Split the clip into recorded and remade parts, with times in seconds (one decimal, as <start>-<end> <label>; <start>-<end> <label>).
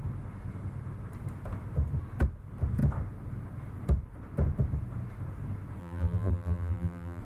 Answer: 0.0-5.8 recorded; 5.8-7.2 remade